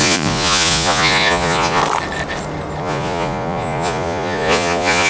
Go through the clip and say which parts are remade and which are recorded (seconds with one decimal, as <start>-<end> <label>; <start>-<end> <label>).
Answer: 0.0-1.8 remade; 1.8-2.8 recorded; 2.8-5.1 remade